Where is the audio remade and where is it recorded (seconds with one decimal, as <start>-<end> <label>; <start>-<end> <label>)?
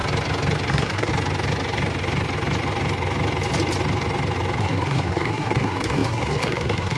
0.0-0.7 recorded; 0.7-1.1 remade; 1.1-4.6 recorded; 4.6-7.0 remade